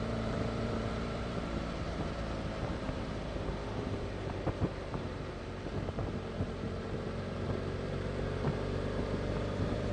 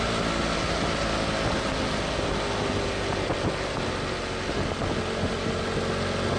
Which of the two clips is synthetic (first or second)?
first